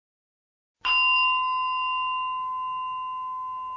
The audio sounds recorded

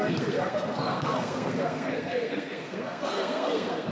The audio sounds remade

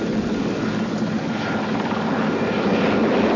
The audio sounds recorded